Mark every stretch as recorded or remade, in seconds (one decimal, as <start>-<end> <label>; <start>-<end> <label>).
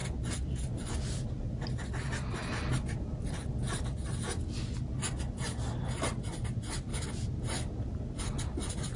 0.0-9.0 recorded